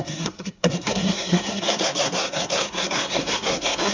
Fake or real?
fake